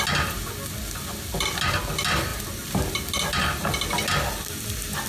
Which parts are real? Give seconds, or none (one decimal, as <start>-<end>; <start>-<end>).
0.0-5.1